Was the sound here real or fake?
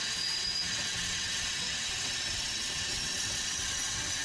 fake